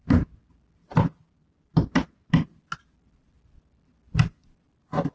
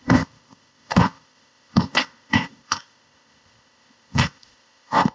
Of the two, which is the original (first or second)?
first